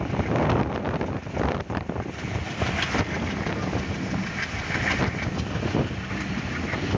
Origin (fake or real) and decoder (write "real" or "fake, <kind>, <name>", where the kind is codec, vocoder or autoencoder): real